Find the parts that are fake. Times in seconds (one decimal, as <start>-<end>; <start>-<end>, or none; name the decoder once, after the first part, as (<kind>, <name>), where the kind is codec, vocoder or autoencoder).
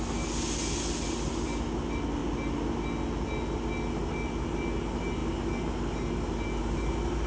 none